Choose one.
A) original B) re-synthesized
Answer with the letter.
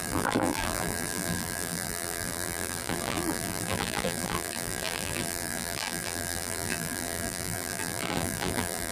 B